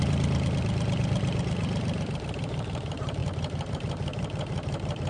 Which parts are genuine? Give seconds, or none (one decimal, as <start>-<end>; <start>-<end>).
none